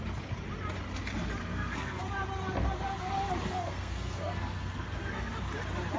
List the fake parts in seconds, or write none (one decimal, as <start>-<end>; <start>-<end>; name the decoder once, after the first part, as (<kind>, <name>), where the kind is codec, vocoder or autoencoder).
1.4-2.0 (codec, SNAC); 3.5-5.4